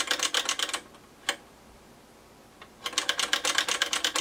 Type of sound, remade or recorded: recorded